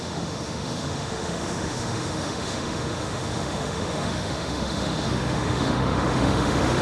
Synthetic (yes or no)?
yes